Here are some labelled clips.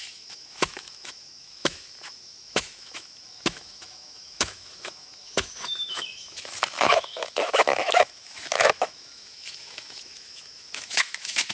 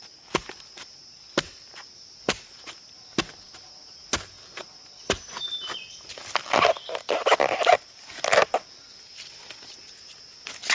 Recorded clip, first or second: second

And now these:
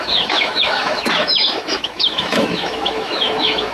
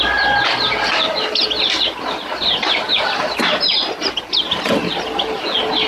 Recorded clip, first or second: second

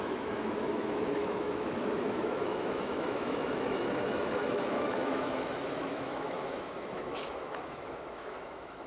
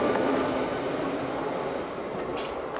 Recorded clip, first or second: second